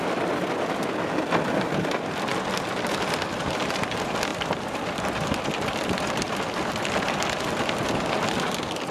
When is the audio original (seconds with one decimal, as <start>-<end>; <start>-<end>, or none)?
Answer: 0.0-4.3; 7.0-8.9